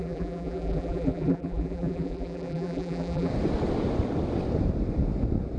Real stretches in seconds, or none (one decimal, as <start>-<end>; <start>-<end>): 3.3-5.6